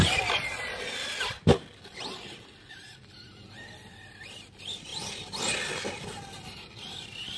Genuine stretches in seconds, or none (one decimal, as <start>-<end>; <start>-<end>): 0.0-7.4